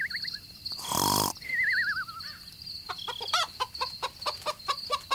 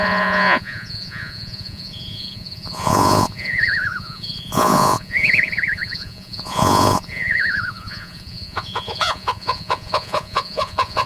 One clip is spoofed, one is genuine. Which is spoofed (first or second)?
second